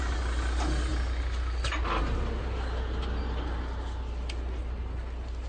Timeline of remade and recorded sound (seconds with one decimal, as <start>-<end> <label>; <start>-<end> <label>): 0.0-5.5 recorded